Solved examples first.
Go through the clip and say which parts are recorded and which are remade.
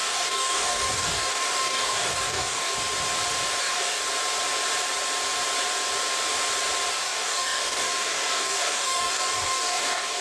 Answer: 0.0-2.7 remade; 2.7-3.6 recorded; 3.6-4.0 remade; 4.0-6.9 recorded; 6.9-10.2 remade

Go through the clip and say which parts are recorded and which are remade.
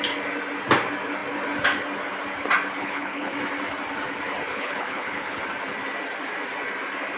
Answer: 0.0-2.8 recorded; 2.8-3.3 remade; 3.3-4.5 recorded; 4.5-5.4 remade; 5.4-7.2 recorded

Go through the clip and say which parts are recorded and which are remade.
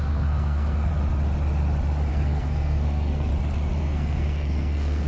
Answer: 0.0-0.9 remade; 0.9-2.1 recorded; 2.1-3.3 remade; 3.3-3.8 recorded; 3.8-5.1 remade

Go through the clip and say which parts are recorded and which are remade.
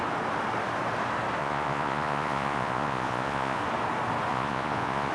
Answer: 0.0-1.4 recorded; 1.4-3.6 remade; 3.6-4.3 recorded; 4.3-5.1 remade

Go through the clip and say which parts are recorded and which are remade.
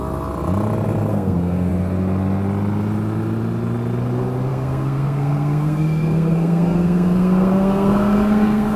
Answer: 0.0-1.1 recorded; 1.1-1.7 remade; 1.7-4.5 recorded; 4.5-8.8 remade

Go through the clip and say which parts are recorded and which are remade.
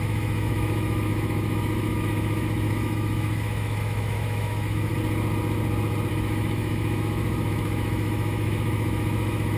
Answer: 0.0-4.9 remade; 4.9-6.1 recorded; 6.1-9.6 remade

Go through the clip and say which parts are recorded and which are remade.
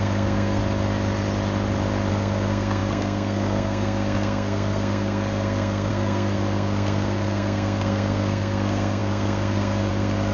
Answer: 0.0-0.6 remade; 0.6-2.1 recorded; 2.1-10.3 remade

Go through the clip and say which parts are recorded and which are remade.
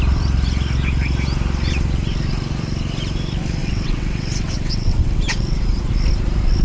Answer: 0.0-3.6 recorded; 3.6-5.9 remade; 5.9-6.6 recorded